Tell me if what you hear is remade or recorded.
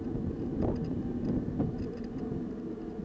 recorded